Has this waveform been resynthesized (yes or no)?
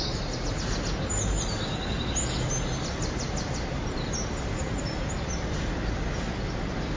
no